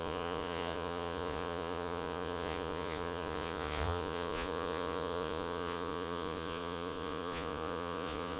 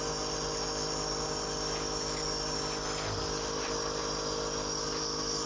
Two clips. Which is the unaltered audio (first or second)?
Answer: second